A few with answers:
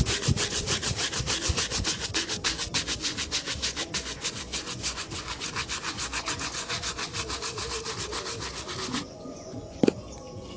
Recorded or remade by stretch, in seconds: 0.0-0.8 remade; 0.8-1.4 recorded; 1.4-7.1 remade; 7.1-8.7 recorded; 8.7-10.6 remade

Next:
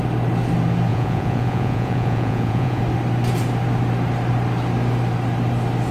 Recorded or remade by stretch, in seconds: 0.0-0.9 recorded; 0.9-2.8 remade; 2.8-5.9 recorded

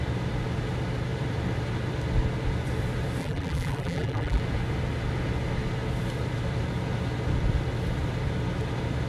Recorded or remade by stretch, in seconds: 0.0-3.2 recorded; 3.2-4.4 remade; 4.4-9.1 recorded

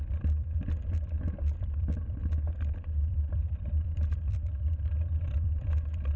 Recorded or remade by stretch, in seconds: 0.0-2.2 remade; 2.2-3.1 recorded; 3.1-6.2 remade